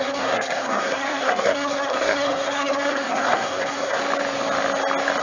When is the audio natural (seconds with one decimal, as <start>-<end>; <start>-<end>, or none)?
4.0-5.2